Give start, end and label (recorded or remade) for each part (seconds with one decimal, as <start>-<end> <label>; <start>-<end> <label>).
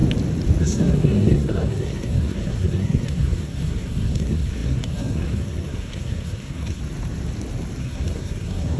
0.0-0.6 recorded; 0.6-6.8 remade; 6.8-7.8 recorded; 7.8-8.8 remade